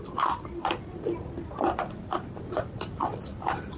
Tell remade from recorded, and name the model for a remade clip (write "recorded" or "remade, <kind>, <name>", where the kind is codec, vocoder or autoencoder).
recorded